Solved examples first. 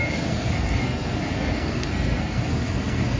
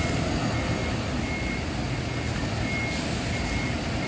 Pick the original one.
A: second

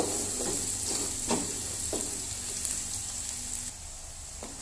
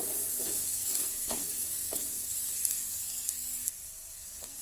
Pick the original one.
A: first